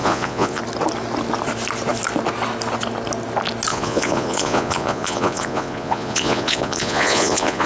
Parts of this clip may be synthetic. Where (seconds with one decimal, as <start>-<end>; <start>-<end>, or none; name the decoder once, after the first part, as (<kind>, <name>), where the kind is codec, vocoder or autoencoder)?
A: 0.0-0.6 (vocoder, Vocos); 3.7-7.7